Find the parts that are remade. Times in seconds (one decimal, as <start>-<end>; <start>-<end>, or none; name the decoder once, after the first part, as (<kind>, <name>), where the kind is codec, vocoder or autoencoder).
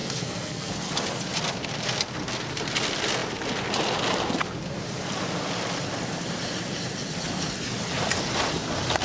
0.0-0.9 (codec, SNAC)